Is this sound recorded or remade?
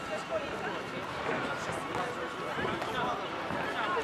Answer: remade